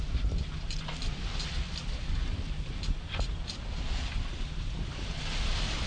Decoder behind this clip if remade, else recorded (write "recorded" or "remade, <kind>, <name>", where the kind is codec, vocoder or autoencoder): remade, vocoder, BigVGAN v2